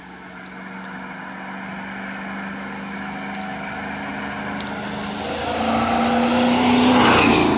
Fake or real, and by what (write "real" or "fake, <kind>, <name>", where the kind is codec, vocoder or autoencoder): real